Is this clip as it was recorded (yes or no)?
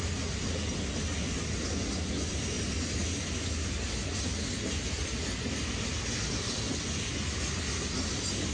yes